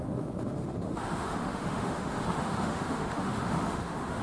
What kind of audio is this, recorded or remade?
remade